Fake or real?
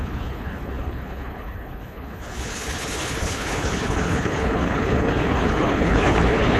fake